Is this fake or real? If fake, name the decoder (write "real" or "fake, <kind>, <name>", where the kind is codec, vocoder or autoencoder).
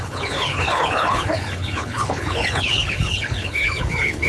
fake, codec, HILCodec